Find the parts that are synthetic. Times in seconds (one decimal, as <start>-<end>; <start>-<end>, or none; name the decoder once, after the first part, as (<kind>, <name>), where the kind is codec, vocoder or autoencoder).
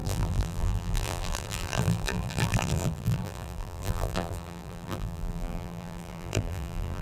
0.0-7.0 (vocoder, BigVGAN v2)